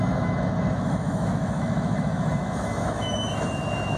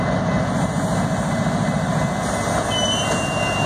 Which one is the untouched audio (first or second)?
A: second